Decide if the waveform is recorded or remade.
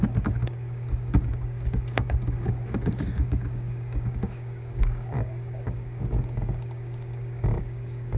remade